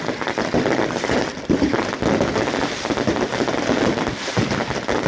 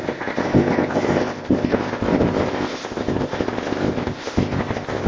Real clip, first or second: first